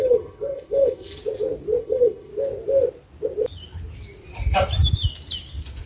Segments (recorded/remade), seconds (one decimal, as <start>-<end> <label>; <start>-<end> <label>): 0.0-1.2 remade; 1.2-1.8 recorded; 1.8-2.3 remade; 2.3-5.9 recorded